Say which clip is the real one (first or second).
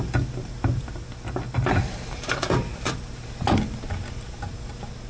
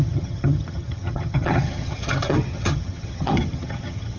first